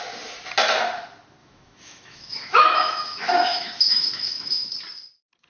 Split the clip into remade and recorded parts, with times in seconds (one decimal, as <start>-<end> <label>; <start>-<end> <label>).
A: 0.0-1.4 recorded; 1.4-4.7 remade; 4.7-5.5 recorded